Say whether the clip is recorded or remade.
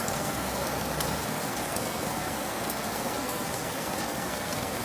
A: remade